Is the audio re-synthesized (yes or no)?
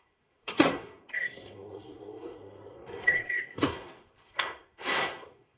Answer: yes